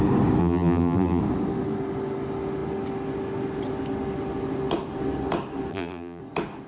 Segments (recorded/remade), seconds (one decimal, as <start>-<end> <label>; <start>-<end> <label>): 0.0-0.4 recorded; 0.4-1.2 remade; 1.2-5.7 recorded; 5.7-6.2 remade; 6.2-6.7 recorded